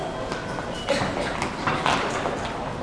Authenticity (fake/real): real